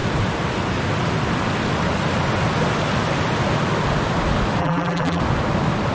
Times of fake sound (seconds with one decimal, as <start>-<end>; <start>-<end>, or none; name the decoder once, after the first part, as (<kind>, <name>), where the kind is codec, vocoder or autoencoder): 4.6-5.2 (vocoder, BigVGAN v2)